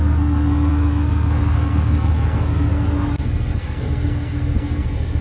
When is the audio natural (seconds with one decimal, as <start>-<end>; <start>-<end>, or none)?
none